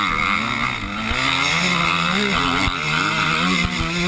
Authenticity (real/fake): real